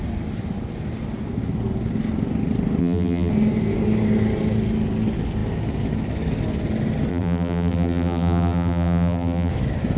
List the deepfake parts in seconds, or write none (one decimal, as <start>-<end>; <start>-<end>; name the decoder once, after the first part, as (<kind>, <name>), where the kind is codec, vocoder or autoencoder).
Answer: 2.8-3.3 (vocoder, BigVGAN v2); 7.1-9.5

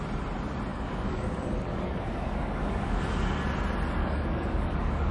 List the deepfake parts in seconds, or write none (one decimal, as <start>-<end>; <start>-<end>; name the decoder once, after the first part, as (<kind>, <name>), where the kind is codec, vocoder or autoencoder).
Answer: 0.7-3.0 (codec, DAC); 4.0-5.1

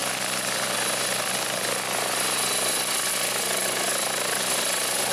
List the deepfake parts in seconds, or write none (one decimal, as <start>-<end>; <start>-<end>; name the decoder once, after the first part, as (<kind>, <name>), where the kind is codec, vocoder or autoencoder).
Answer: none